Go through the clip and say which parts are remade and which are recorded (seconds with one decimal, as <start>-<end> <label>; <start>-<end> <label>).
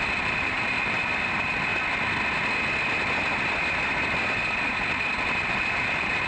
0.0-1.7 remade; 1.7-5.5 recorded; 5.5-6.3 remade